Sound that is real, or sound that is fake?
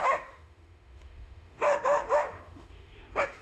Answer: fake